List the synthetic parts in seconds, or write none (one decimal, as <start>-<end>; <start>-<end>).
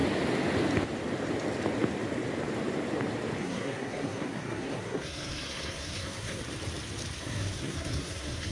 3.4-6.4; 7.2-8.5